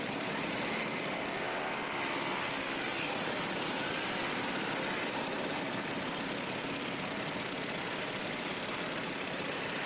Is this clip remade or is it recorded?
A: recorded